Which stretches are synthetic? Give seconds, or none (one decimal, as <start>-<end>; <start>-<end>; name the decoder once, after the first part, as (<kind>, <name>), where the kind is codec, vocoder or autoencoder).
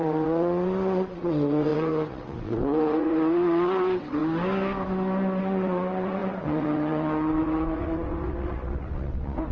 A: 0.0-4.2 (vocoder, WaveNeXt); 5.4-9.5